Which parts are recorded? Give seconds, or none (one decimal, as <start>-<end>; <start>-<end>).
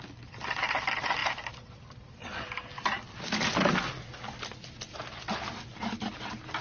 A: 0.0-6.6